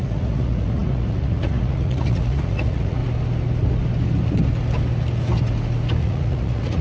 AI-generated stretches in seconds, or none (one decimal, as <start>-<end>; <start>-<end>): 0.0-3.0; 6.0-6.8